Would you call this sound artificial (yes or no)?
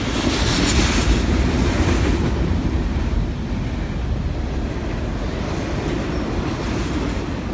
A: no